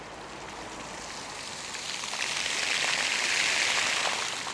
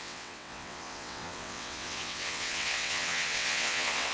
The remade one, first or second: second